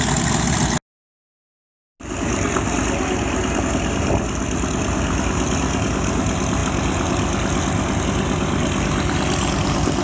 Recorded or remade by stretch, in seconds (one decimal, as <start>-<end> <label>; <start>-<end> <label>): 0.0-10.0 recorded